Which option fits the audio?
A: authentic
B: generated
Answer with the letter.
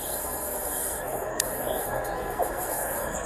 B